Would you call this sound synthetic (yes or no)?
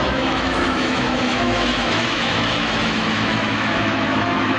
yes